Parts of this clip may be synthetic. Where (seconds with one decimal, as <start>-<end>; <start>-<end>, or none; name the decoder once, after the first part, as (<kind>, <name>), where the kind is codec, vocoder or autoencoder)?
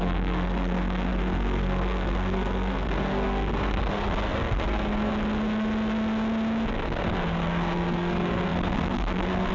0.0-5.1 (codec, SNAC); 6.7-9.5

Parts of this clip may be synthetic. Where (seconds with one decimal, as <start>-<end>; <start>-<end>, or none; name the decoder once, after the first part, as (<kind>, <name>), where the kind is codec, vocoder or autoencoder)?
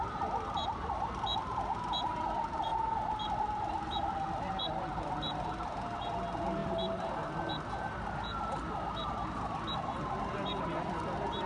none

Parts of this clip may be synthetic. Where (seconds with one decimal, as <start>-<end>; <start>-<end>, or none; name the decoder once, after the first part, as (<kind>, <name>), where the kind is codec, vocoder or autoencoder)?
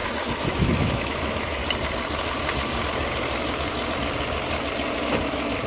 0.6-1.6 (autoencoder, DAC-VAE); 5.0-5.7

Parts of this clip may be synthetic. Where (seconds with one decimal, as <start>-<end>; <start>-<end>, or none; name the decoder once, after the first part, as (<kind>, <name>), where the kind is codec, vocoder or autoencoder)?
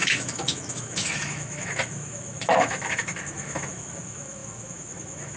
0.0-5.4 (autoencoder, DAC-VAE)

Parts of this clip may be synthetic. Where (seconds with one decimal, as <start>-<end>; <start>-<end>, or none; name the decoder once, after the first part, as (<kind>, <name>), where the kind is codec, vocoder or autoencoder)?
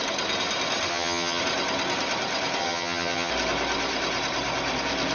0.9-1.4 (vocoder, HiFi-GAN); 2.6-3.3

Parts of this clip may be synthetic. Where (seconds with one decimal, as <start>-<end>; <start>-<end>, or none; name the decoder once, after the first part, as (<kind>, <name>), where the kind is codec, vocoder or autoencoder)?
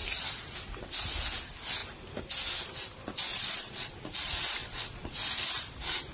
3.3-3.9 (vocoder, Vocos); 4.6-5.2